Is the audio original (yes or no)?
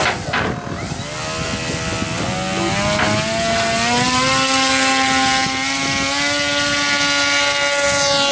yes